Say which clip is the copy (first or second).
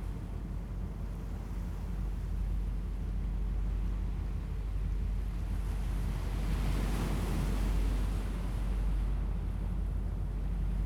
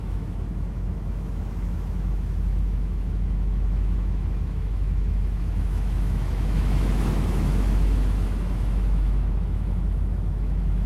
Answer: second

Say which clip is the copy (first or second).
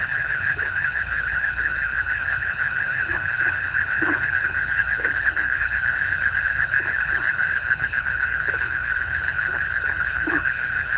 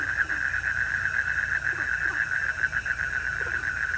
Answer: first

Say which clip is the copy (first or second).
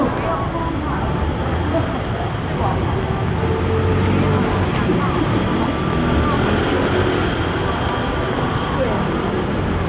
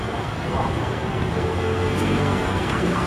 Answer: second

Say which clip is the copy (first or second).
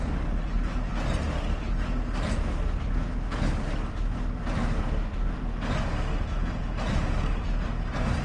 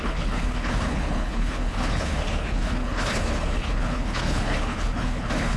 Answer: second